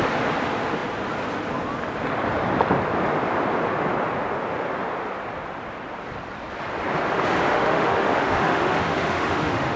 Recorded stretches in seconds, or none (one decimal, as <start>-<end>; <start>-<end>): 0.0-7.5